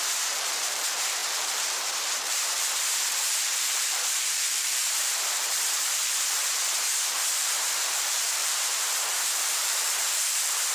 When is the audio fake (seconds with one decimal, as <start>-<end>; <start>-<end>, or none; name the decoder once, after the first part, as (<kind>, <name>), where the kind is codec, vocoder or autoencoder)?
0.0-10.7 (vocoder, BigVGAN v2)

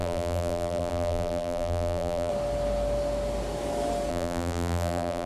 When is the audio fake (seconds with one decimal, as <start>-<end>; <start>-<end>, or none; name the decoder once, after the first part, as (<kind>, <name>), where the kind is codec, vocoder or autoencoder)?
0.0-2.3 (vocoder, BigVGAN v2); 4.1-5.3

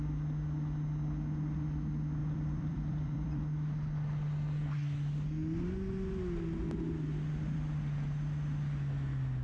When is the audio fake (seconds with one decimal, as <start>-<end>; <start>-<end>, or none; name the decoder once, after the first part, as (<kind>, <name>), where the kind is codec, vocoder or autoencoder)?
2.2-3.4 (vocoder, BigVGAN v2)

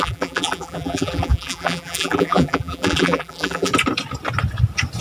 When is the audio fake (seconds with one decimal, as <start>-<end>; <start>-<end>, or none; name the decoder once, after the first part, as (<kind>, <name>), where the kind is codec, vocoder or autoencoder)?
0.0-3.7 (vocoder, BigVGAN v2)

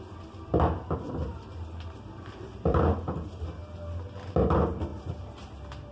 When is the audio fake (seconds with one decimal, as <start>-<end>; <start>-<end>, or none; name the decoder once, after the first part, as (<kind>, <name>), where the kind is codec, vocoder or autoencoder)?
1.3-3.4 (vocoder, BigVGAN v2); 4.9-5.9